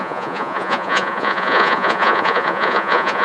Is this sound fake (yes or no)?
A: yes